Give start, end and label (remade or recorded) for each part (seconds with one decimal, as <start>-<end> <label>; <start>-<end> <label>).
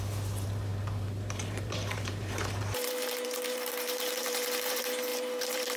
0.0-5.8 remade